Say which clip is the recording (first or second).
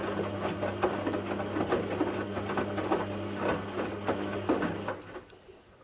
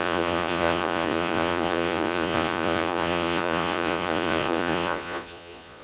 first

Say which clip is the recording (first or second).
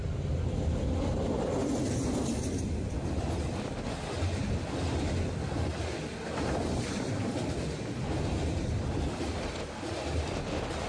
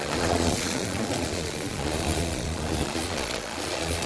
first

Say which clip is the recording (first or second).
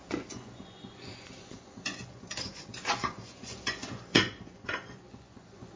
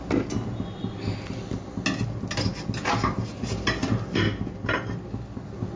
second